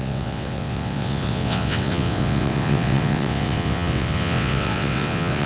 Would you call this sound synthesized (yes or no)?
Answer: yes